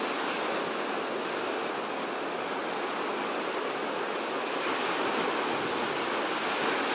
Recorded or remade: recorded